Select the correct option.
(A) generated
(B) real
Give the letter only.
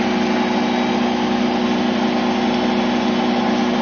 B